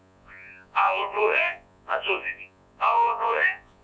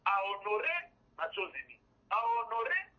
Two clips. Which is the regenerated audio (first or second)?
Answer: first